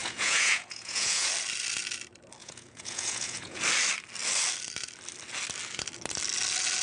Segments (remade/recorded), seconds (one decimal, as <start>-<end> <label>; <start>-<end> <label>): 0.0-1.3 remade; 1.3-2.4 recorded; 2.4-3.6 remade; 3.6-6.8 recorded